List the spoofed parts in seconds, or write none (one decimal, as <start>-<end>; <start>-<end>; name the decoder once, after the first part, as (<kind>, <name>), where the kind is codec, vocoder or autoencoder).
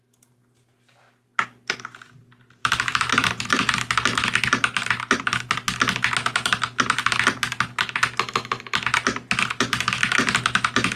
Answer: 2.6-3.5 (vocoder, BigVGAN v2)